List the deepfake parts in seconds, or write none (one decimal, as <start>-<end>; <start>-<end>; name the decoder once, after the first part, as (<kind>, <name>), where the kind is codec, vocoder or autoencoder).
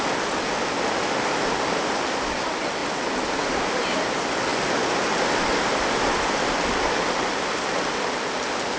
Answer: none